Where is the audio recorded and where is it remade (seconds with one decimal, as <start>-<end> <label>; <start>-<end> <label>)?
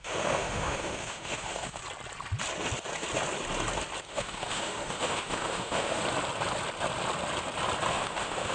0.0-1.8 remade; 1.8-4.0 recorded; 4.0-6.0 remade; 6.0-7.9 recorded; 7.9-8.5 remade